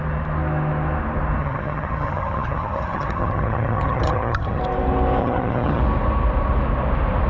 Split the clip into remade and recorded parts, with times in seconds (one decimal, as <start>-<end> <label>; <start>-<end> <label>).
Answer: 0.0-1.4 recorded; 1.4-4.6 remade; 4.6-5.2 recorded; 5.2-5.8 remade; 5.8-7.3 recorded